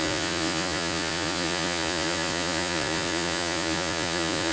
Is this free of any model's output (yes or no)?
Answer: no